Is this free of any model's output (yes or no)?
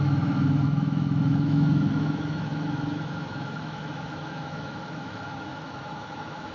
no